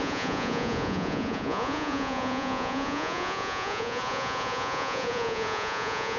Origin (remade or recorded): remade